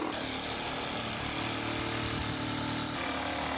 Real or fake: real